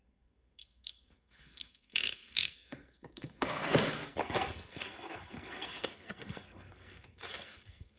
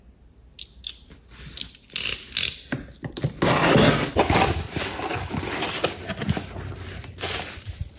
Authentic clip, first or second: second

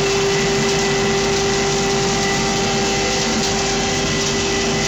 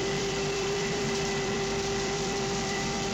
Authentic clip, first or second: first